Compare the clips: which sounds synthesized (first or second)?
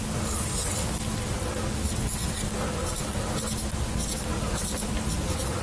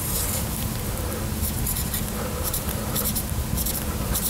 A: second